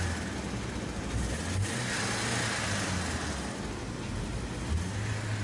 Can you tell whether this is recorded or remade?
recorded